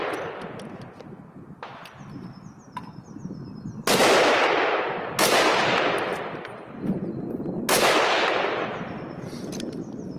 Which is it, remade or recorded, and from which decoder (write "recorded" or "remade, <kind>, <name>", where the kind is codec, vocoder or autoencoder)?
recorded